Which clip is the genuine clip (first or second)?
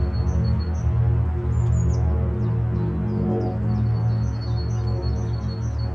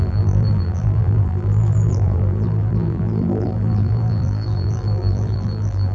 first